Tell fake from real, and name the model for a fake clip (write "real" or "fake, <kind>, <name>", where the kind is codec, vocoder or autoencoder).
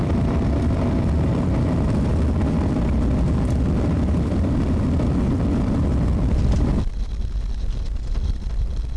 fake, vocoder, BigVGAN v2